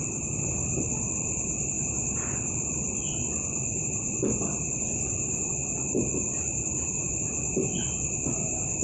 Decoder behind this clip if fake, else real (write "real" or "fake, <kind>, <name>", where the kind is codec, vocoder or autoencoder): fake, vocoder, BigVGAN v2